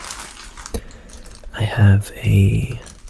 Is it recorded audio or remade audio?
recorded